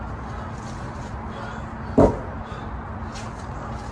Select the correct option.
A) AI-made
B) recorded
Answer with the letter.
B